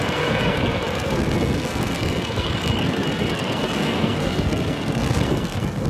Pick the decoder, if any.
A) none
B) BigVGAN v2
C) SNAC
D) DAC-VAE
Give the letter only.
C